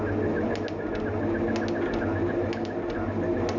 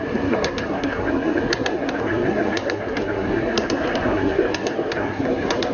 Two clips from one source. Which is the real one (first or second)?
first